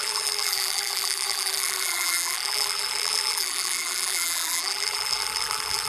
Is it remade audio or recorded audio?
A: remade